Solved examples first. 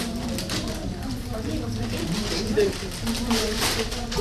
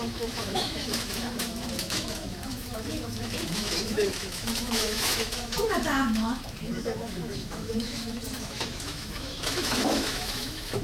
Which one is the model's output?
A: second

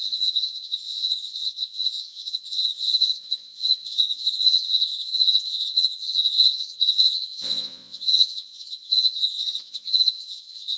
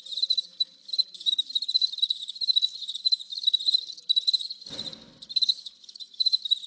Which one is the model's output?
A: first